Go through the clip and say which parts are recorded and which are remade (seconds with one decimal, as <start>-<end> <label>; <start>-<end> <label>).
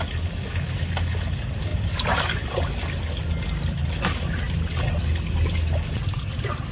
0.0-6.7 recorded